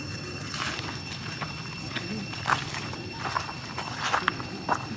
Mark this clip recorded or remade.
recorded